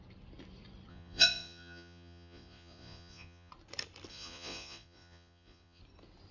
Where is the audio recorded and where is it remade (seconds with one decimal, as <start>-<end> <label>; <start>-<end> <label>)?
0.0-0.9 recorded; 0.9-3.5 remade; 3.5-4.1 recorded; 4.1-5.8 remade; 5.8-6.3 recorded